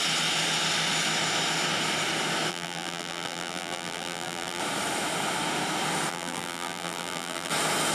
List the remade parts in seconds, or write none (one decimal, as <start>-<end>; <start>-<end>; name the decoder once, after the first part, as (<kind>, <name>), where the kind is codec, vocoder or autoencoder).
2.5-4.6 (vocoder, BigVGAN v2); 6.1-7.5